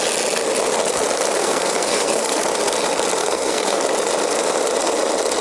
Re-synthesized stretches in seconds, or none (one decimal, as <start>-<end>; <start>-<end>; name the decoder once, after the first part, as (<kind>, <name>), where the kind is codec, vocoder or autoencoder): 1.4-2.4 (codec, SNAC); 3.2-3.8